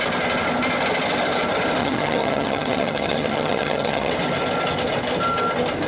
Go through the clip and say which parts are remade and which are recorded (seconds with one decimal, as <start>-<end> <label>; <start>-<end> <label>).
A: 0.0-1.8 recorded; 1.8-4.1 remade; 4.1-5.9 recorded